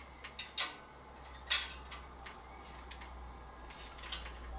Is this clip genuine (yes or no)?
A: yes